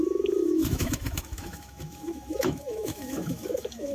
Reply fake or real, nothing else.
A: fake